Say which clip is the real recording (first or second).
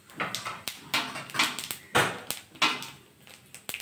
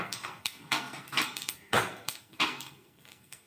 first